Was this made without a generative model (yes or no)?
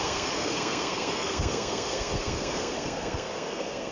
no